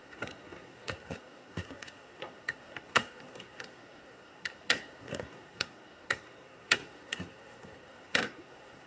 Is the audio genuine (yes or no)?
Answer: no